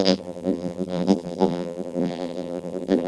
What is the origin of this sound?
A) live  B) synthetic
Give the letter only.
B